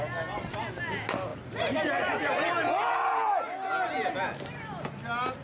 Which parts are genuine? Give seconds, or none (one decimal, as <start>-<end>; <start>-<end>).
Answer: 0.0-5.4